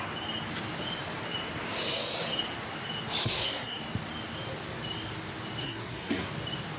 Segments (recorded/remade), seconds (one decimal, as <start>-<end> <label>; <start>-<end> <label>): 0.0-3.2 recorded; 3.2-3.8 remade; 3.8-5.6 recorded; 5.6-6.3 remade; 6.3-6.8 recorded